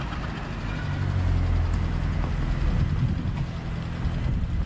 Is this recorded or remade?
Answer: recorded